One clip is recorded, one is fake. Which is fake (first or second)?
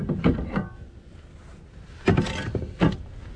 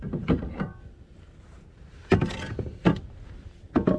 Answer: second